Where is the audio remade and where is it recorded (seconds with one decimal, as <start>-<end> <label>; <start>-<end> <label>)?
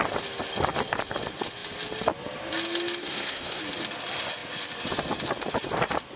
0.0-3.0 recorded; 3.0-3.6 remade; 3.6-6.2 recorded